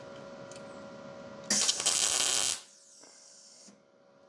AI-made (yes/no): no